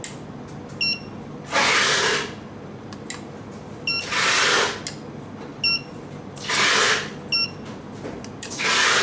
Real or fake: real